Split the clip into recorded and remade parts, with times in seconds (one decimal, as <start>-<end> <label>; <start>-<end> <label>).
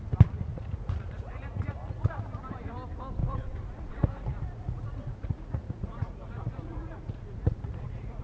0.0-0.5 recorded; 0.5-2.2 remade; 2.2-3.2 recorded; 3.2-8.2 remade